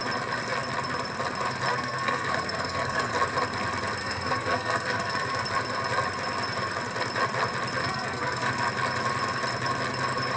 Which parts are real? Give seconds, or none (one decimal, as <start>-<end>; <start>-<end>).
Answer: 0.0-1.7; 3.1-4.0; 5.4-7.8; 8.5-10.4